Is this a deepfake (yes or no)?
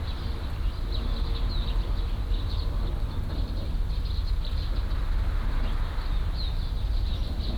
no